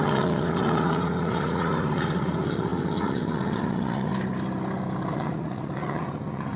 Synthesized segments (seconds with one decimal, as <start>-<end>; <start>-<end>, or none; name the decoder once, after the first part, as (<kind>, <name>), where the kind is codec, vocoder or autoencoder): 0.0-4.1 (vocoder, Vocos); 5.1-6.6